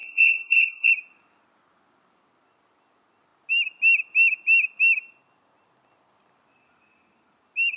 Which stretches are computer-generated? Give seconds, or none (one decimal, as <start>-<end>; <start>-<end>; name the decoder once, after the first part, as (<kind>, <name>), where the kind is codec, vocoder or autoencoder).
0.0-0.9 (codec, SNAC)